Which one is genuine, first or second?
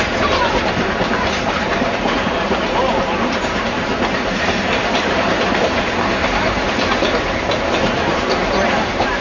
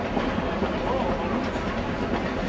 second